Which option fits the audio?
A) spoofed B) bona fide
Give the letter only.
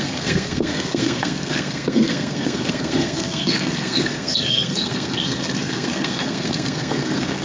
A